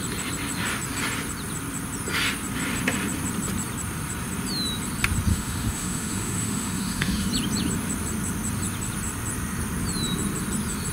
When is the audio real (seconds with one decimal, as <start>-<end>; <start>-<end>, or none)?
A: 0.0-5.3; 7.3-10.9